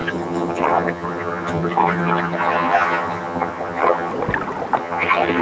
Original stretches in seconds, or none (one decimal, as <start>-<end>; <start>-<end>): 4.1-4.8